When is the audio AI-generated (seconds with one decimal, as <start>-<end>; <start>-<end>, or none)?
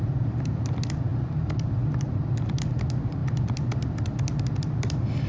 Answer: 0.0-5.3